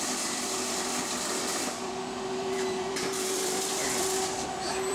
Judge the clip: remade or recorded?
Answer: remade